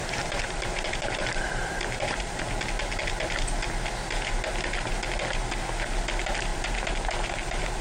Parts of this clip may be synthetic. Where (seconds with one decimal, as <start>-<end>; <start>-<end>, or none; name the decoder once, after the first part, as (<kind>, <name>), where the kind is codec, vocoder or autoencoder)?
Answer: 0.0-2.4 (vocoder, BigVGAN v2); 6.5-7.8